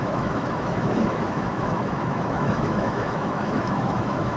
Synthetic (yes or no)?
yes